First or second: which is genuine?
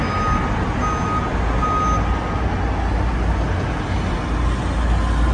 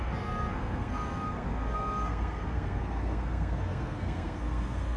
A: first